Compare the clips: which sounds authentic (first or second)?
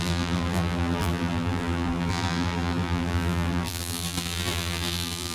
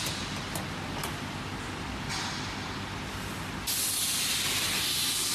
second